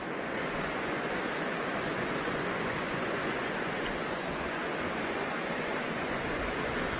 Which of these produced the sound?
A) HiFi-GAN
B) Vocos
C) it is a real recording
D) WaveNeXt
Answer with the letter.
B